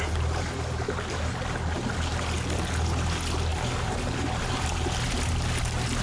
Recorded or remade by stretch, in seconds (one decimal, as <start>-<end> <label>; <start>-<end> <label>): 0.0-6.0 recorded